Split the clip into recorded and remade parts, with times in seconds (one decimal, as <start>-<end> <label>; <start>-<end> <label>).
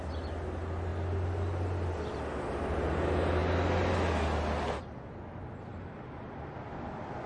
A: 0.0-7.3 recorded